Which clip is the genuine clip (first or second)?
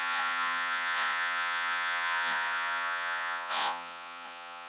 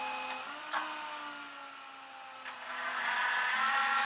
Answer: second